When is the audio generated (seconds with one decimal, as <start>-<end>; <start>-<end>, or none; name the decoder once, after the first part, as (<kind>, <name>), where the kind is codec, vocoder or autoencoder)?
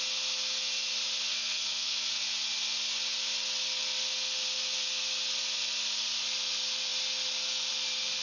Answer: 1.3-2.1 (codec, SNAC)